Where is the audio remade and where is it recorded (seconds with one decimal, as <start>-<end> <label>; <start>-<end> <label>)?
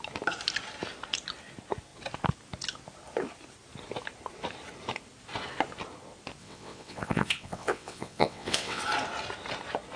0.0-6.4 recorded; 6.4-8.8 remade; 8.8-10.0 recorded